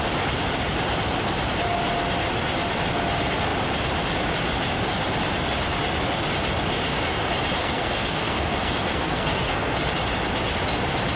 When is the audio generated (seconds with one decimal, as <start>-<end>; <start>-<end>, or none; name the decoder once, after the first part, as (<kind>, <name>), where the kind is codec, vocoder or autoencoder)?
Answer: 7.6-9.9 (codec, SNAC)